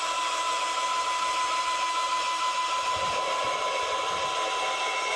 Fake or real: real